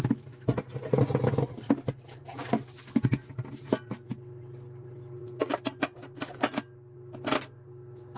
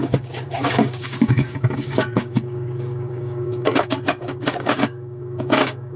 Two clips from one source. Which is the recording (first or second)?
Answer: first